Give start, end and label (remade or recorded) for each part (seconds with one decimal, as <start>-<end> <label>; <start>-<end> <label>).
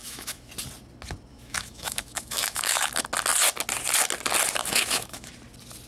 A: 0.0-0.5 remade; 0.5-1.3 recorded; 1.3-2.9 remade; 2.9-4.6 recorded; 4.6-5.3 remade; 5.3-5.9 recorded